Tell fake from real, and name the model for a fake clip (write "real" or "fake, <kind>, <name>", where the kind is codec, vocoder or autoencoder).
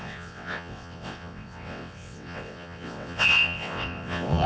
fake, vocoder, WaveNeXt